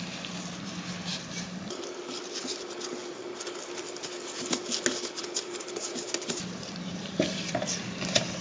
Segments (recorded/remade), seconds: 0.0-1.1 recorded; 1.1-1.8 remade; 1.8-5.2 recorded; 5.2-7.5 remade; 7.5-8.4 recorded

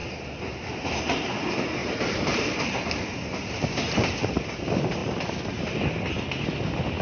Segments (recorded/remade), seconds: 0.0-1.8 recorded; 1.8-4.3 remade; 4.3-7.0 recorded

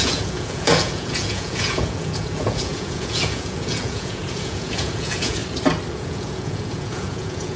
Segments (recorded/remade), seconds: 0.0-5.4 remade; 5.4-5.9 recorded; 5.9-7.6 remade

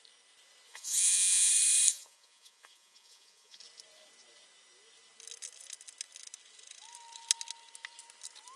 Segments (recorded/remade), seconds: 0.0-0.7 recorded; 0.7-1.5 remade; 1.5-1.9 recorded; 1.9-3.6 remade; 3.6-8.6 recorded